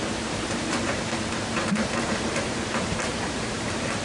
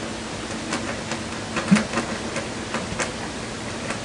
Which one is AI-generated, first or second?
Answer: first